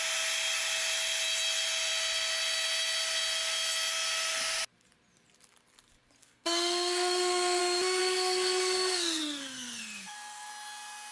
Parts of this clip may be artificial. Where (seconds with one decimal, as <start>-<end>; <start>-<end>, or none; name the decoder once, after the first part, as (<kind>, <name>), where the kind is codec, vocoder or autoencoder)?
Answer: 6.2-7.6 (codec, SNAC); 8.0-10.5